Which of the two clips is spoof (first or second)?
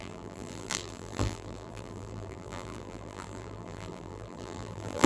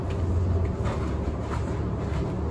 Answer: first